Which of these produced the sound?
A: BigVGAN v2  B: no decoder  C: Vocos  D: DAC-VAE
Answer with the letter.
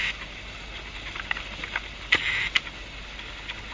B